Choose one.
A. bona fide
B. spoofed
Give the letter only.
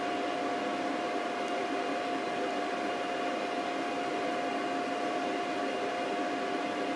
A